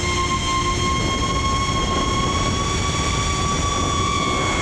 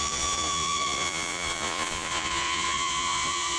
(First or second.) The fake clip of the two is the second